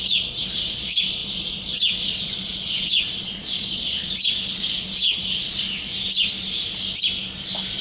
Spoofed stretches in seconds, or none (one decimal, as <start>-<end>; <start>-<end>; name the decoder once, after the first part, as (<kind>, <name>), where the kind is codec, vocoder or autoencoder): 0.0-5.9 (vocoder, Vocos)